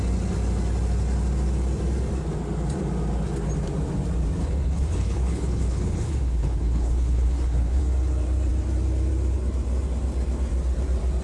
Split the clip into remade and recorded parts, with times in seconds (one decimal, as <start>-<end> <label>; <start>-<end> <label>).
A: 0.0-4.4 recorded; 4.4-7.8 remade; 7.8-11.2 recorded